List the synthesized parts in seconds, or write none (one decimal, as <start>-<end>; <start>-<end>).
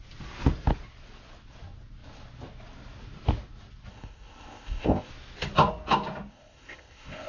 3.9-5.1; 6.3-7.3